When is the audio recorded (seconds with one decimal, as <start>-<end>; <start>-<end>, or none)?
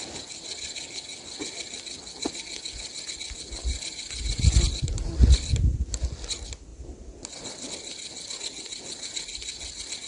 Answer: 0.0-10.1